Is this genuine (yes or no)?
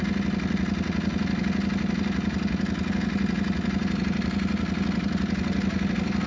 yes